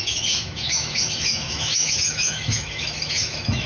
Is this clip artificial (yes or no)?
yes